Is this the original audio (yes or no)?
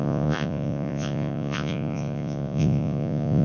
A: no